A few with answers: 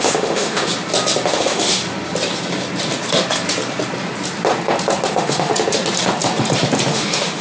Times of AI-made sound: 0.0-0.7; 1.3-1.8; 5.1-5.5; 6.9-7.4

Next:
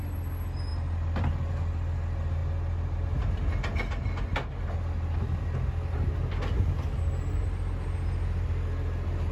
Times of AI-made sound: none

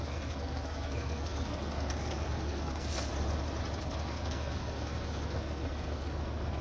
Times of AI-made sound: 0.0-3.1; 3.8-6.6

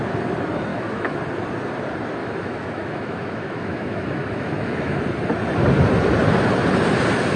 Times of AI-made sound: 0.7-1.2; 2.2-5.0

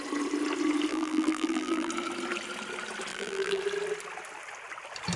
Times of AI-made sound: 0.9-1.9; 3.1-3.6

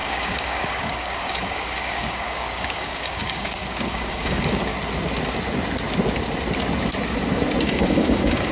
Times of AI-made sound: 0.0-4.7; 7.6-8.5

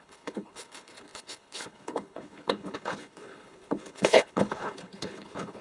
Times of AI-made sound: 0.0-5.6

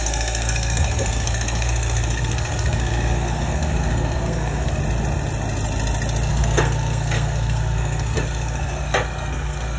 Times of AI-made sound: 0.0-4.8; 6.3-9.8